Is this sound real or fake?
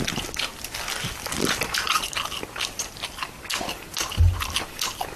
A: real